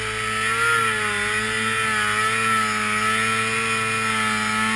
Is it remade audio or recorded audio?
recorded